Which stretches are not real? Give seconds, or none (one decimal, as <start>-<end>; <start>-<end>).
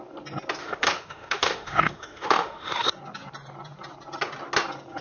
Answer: 0.6-2.9